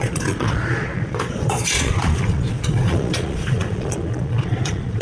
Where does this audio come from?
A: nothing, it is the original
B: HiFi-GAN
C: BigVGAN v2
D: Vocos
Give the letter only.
D